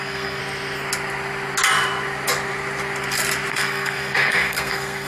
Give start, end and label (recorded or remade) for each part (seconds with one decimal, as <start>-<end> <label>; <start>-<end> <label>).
0.0-0.4 remade; 0.4-3.5 recorded; 3.5-5.1 remade

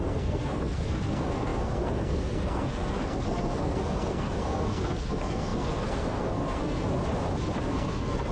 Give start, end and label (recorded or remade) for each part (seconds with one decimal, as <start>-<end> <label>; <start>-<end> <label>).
0.0-7.0 remade; 7.0-7.6 recorded; 7.6-8.3 remade